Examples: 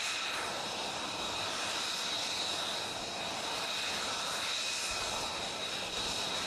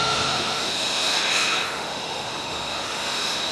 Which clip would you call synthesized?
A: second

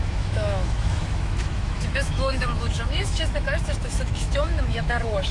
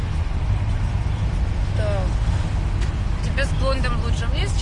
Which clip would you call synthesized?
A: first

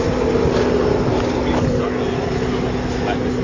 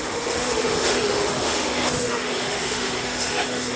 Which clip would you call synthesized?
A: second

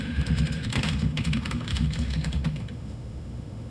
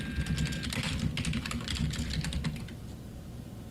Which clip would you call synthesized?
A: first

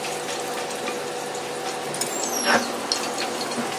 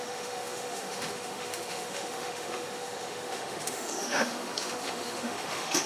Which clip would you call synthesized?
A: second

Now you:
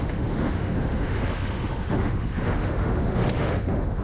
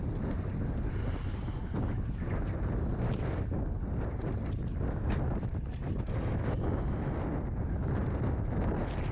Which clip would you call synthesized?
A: first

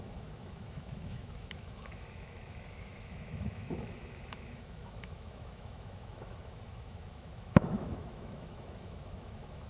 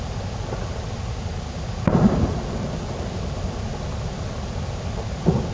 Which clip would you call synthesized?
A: first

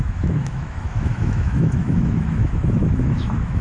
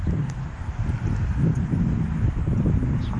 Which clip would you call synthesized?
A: first